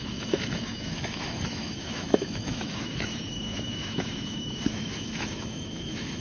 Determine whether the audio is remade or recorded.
remade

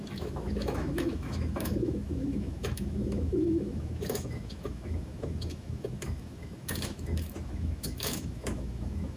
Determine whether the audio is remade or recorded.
remade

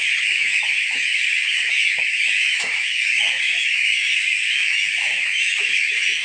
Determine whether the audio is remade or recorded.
remade